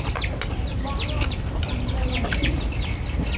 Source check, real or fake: real